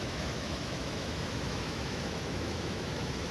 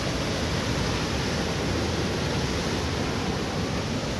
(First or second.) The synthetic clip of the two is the first